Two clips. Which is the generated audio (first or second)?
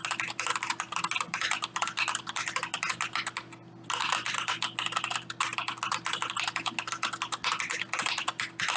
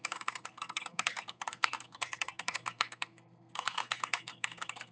second